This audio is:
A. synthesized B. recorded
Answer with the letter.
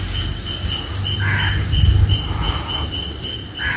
B